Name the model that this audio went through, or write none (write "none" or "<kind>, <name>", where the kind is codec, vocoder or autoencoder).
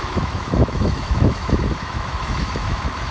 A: autoencoder, DAC-VAE